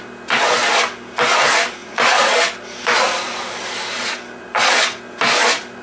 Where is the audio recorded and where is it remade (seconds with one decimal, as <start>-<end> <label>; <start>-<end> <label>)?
0.0-1.8 recorded; 1.8-2.3 remade; 2.3-5.8 recorded